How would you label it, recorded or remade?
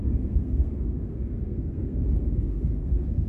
remade